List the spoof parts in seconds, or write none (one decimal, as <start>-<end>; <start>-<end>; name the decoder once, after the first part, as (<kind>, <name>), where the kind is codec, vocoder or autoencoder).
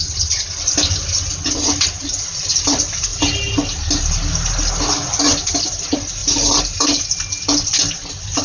6.2-6.8 (vocoder, BigVGAN v2)